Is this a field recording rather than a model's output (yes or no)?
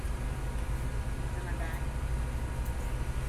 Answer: yes